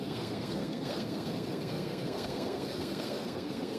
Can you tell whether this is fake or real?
fake